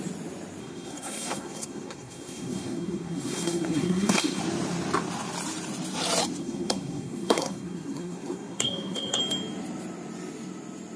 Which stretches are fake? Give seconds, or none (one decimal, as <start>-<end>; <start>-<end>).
0.6-4.4; 6.4-9.2